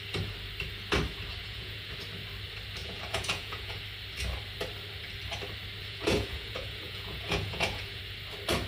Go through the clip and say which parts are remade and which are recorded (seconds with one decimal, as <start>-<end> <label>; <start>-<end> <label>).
0.0-1.4 recorded; 1.4-1.9 remade; 1.9-2.8 recorded; 2.8-3.8 remade; 3.8-5.8 recorded; 5.8-8.0 remade; 8.0-8.7 recorded